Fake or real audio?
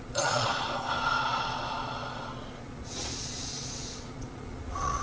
fake